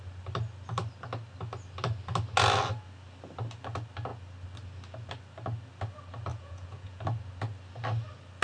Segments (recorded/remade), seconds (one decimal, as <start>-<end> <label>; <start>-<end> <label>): 0.0-6.3 recorded; 6.3-7.0 remade; 7.0-8.4 recorded